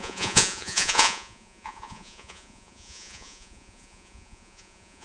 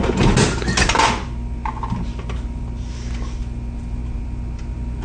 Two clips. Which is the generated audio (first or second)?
first